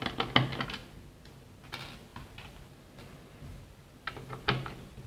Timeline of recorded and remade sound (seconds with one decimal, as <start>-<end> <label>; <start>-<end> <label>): 0.0-5.1 recorded